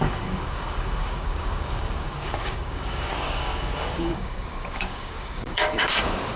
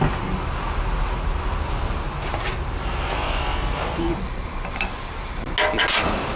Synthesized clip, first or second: first